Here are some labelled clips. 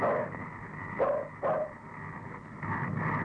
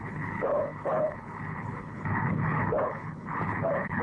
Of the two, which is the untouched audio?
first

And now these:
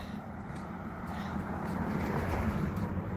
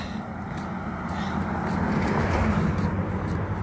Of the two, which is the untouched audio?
second